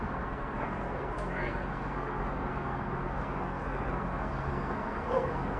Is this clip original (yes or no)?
no